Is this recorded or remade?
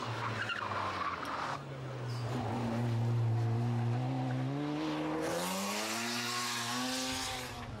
recorded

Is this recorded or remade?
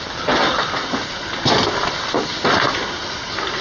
recorded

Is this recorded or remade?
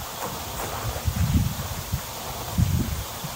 recorded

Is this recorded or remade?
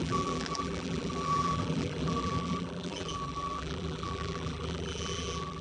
remade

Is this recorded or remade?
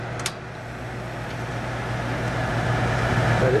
recorded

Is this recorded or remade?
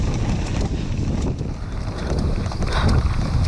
recorded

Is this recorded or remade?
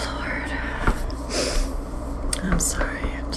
remade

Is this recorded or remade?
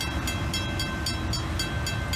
recorded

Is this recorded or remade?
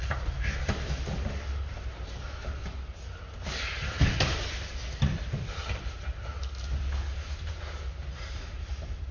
recorded